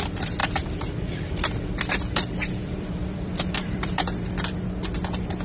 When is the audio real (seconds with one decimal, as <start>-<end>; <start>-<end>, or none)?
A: 0.0-0.4; 1.9-2.6; 4.2-5.4